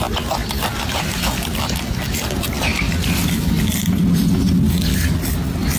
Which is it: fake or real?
real